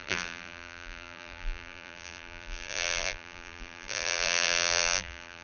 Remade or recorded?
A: remade